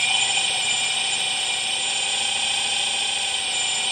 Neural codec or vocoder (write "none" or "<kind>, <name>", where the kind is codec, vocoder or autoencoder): none